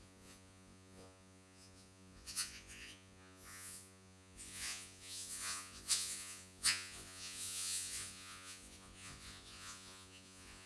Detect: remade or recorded remade